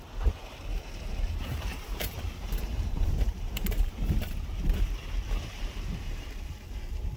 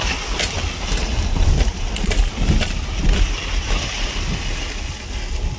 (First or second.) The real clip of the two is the second